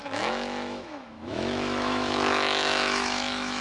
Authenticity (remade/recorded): remade